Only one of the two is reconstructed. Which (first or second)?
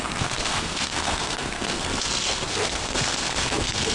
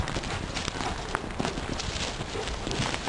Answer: first